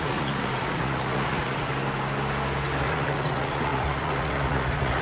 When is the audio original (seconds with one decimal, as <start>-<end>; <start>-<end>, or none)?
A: 1.7-2.8